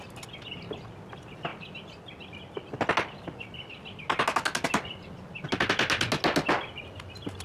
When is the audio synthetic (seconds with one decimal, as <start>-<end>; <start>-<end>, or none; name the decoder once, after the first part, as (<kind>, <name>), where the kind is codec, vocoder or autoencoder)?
none